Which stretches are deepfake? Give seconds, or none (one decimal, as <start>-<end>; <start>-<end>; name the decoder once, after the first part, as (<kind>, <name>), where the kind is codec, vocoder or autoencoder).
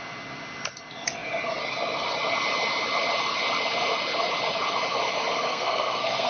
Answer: 5.5-6.3 (codec, SNAC)